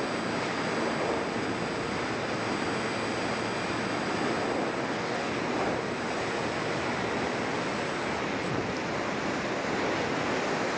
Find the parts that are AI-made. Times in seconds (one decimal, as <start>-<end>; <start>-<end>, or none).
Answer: 4.8-5.3